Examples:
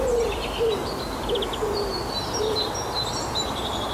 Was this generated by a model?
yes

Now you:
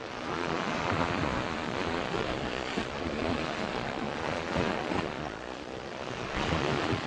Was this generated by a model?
yes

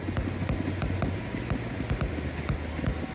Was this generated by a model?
no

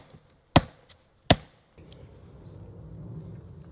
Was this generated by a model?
no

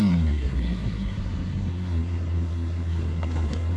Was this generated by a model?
yes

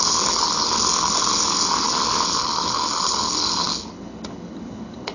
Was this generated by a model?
yes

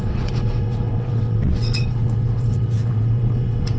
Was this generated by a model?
yes